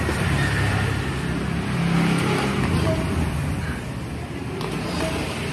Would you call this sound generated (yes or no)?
no